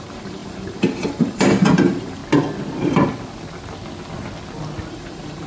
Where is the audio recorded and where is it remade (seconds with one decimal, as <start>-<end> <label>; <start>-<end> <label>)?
0.0-2.2 remade; 2.2-4.9 recorded; 4.9-5.5 remade